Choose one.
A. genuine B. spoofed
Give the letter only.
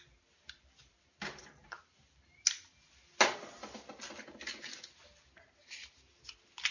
A